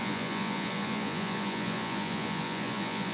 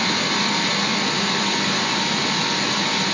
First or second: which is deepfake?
first